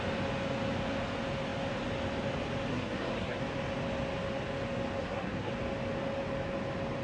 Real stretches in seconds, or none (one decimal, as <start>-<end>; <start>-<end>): 0.0-2.7; 3.4-5.0; 5.5-7.0